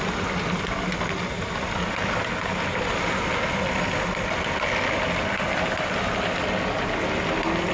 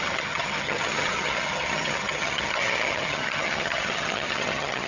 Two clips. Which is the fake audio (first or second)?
second